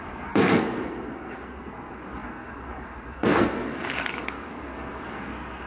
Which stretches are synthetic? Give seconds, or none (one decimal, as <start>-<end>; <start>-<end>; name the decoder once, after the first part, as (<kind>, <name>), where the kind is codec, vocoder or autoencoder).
0.0-5.7 (codec, SNAC)